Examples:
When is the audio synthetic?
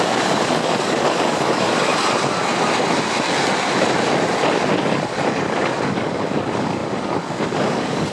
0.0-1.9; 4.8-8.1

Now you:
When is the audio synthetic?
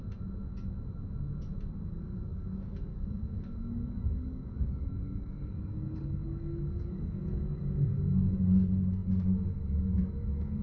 1.9-10.6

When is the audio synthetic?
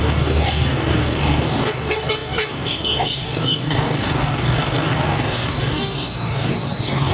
0.0-7.1